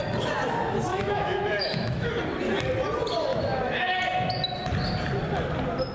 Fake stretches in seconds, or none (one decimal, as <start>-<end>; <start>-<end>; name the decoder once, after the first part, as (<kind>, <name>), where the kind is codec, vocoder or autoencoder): 0.9-2.1 (autoencoder, DAC-VAE); 3.3-4.0